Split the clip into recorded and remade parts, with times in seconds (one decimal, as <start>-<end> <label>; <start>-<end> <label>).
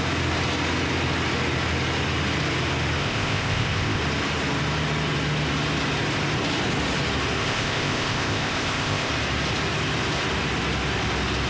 0.0-3.0 recorded; 3.0-4.0 remade; 4.0-7.4 recorded; 7.4-9.1 remade; 9.1-11.5 recorded